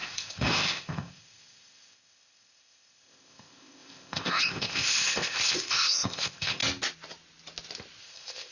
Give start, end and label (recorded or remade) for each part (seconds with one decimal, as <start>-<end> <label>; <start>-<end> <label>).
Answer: 0.0-6.6 remade; 6.6-8.0 recorded; 8.0-8.5 remade